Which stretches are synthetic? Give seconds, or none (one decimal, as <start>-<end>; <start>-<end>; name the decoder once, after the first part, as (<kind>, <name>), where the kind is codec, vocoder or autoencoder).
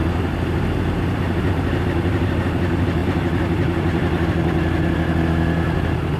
none